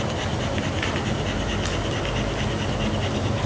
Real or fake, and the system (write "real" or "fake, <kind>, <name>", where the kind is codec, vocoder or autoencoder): real